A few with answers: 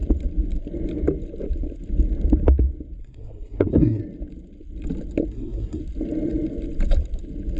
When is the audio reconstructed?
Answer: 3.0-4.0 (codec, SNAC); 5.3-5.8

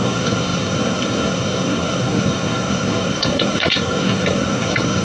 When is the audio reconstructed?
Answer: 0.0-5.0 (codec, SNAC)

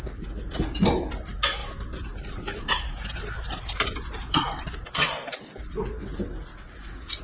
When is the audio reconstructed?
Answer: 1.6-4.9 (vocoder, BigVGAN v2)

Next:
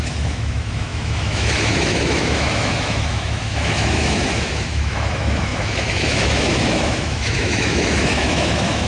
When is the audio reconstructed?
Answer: 0.0-8.9 (autoencoder, DAC-VAE)

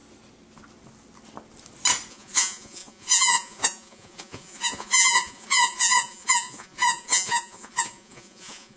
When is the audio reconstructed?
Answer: 2.1-8.8 (vocoder, Vocos)

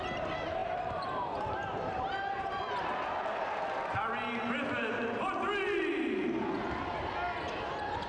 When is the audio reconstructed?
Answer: 0.6-2.5 (vocoder, BigVGAN v2)